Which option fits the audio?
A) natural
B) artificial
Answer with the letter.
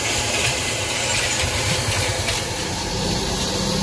B